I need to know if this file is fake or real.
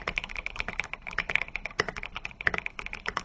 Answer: fake